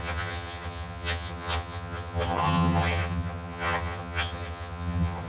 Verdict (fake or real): fake